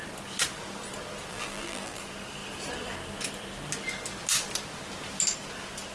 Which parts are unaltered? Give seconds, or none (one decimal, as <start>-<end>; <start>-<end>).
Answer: 0.0-1.3; 2.0-5.9